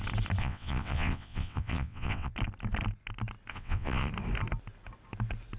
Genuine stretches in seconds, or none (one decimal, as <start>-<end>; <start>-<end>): 0.0-0.4; 2.3-3.5; 4.1-5.6